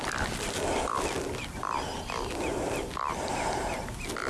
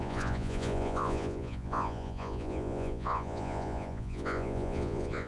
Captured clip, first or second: first